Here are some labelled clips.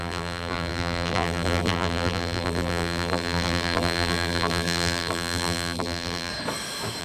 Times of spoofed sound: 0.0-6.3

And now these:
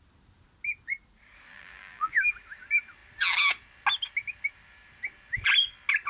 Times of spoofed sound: 1.5-2.1

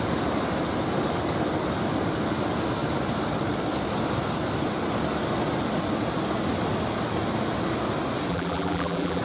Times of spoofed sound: 8.3-9.2

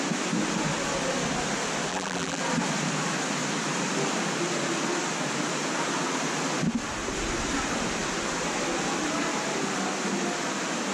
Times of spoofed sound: 1.9-2.4

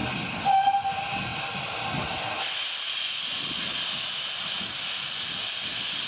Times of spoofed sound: none

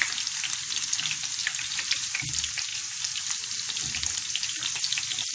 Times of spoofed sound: 1.4-2.2